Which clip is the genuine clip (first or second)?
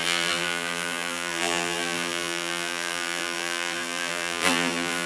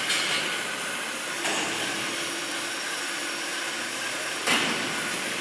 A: second